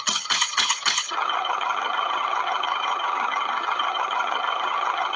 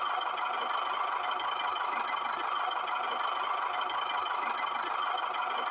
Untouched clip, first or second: second